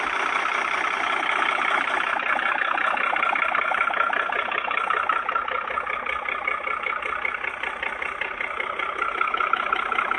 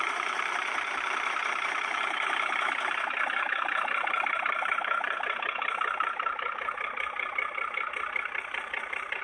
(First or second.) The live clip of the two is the first